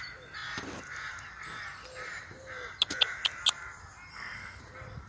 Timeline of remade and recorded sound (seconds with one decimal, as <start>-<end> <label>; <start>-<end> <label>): 0.0-4.1 recorded; 4.1-4.6 remade; 4.6-5.1 recorded